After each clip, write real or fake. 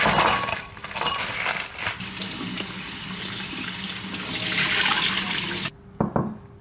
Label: real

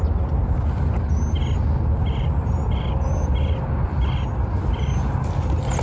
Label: real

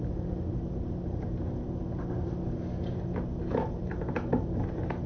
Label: real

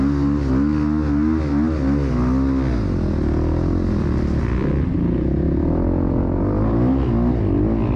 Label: real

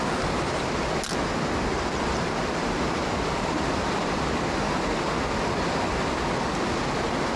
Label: real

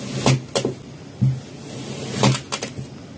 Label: real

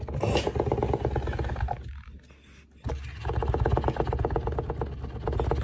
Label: real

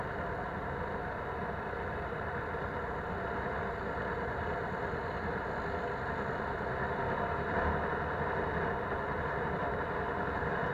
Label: real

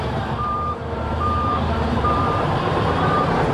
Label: fake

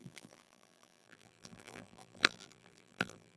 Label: fake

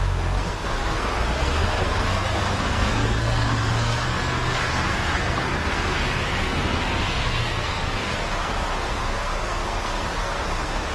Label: fake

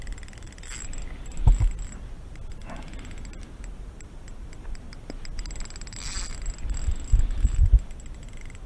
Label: real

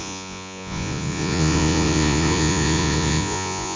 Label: fake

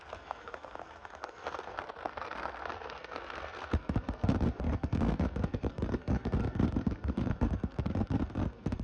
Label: fake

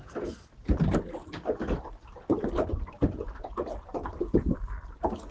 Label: real